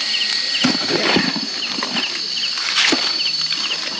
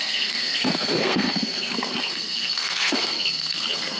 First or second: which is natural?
first